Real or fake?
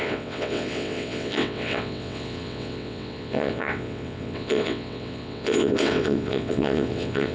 fake